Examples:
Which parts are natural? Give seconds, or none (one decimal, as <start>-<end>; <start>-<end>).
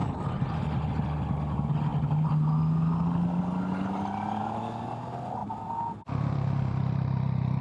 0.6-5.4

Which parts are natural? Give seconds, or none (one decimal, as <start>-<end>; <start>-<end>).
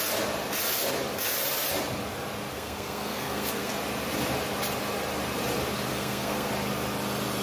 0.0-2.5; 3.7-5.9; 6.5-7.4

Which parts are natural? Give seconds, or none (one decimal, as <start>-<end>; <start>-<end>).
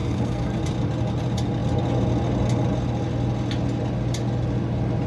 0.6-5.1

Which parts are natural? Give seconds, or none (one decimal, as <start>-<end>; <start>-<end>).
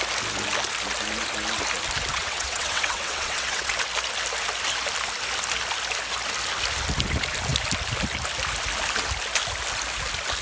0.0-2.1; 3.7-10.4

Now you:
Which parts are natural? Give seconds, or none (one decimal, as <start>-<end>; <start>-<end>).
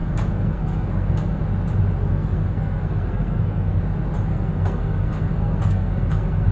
1.4-2.0; 3.8-4.3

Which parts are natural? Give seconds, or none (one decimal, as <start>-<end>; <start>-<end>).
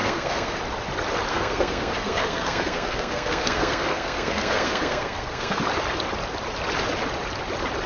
0.6-1.3; 5.6-7.9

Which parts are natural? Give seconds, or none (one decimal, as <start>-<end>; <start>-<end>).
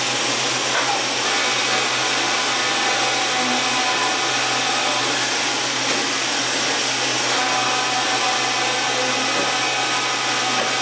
0.0-10.8